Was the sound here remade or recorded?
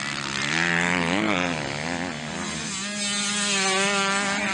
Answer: recorded